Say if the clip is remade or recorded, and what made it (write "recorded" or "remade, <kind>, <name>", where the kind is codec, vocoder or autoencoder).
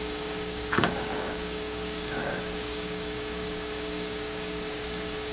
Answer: remade, codec, DAC